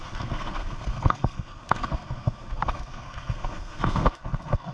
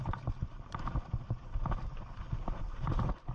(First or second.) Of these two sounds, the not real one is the first